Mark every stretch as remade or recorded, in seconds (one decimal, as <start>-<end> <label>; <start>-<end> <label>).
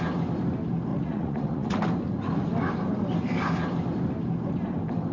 0.0-0.9 recorded; 0.9-1.8 remade; 1.8-5.1 recorded